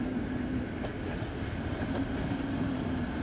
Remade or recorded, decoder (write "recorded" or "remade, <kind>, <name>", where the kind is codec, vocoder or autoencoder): recorded